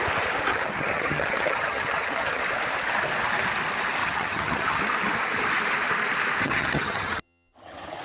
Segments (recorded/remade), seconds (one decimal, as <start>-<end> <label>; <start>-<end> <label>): 0.0-0.5 recorded; 0.5-2.4 remade; 2.4-4.0 recorded; 4.0-4.8 remade; 4.8-6.4 recorded; 6.4-8.0 remade